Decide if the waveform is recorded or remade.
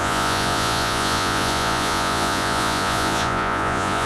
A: remade